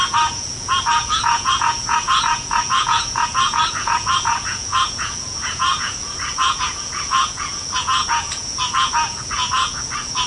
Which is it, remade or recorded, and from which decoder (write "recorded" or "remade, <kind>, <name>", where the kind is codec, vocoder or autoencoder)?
remade, vocoder, Vocos